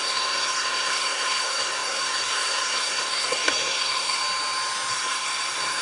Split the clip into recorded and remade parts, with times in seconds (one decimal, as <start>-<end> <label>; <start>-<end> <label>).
0.0-4.2 remade; 4.2-4.9 recorded; 4.9-5.8 remade